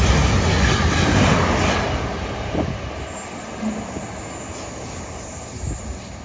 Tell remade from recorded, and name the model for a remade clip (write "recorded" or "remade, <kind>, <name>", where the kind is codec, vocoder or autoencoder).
recorded